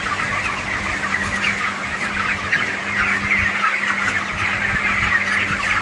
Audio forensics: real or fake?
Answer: real